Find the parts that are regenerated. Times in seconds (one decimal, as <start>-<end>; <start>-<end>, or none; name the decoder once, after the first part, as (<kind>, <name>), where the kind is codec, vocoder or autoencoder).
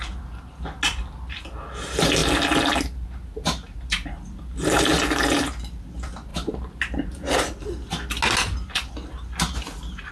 none